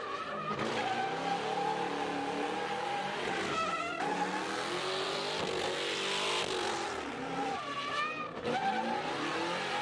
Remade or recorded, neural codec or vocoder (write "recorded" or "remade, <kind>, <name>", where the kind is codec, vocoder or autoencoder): recorded